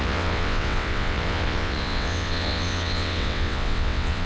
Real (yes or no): no